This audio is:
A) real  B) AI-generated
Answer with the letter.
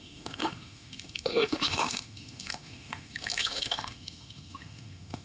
B